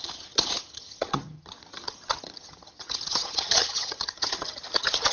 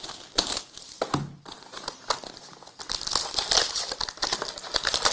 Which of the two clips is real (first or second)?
second